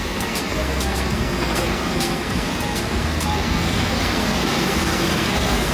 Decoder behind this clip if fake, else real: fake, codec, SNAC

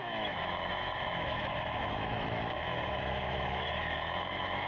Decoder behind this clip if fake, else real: fake, autoencoder, DAC-VAE